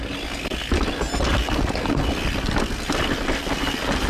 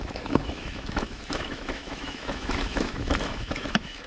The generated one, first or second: second